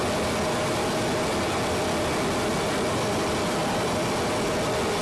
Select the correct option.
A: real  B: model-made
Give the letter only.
A